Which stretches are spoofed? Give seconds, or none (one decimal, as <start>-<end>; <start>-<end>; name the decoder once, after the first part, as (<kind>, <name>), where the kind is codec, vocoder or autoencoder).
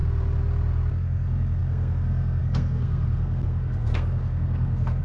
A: 0.9-5.0 (codec, SNAC)